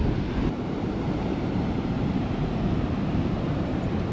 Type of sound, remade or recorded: remade